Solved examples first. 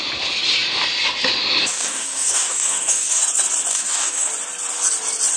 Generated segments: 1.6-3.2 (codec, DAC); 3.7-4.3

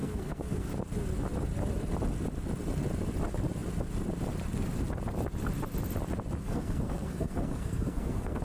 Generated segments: 0.0-0.7 (codec, SNAC); 6.4-8.4

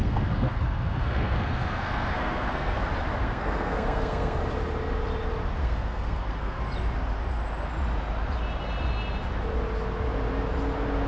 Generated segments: 0.0-2.8 (codec, SNAC); 3.2-4.4; 5.6-6.6